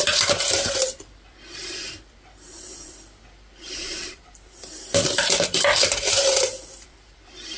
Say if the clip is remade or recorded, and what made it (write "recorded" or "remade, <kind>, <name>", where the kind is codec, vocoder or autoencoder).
remade, vocoder, BigVGAN v2